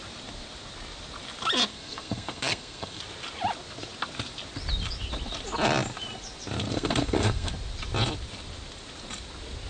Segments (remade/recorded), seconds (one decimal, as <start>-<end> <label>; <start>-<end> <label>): 0.0-1.7 recorded; 1.7-3.0 remade; 3.0-6.7 recorded; 6.7-7.5 remade; 7.5-9.7 recorded